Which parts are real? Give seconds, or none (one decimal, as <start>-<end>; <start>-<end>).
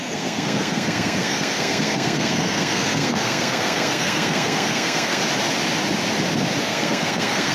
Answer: 5.2-6.6